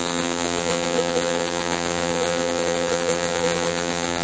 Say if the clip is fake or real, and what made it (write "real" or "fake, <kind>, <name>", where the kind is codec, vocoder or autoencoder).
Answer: fake, vocoder, BigVGAN v2